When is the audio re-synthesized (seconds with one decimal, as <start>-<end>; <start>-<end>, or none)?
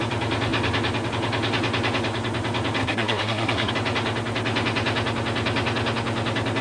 2.8-3.7